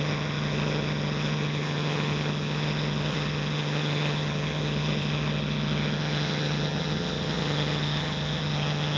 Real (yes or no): no